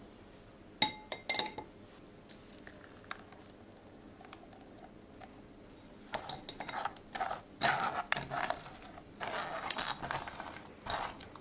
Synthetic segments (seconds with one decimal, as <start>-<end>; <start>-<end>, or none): 9.4-10.0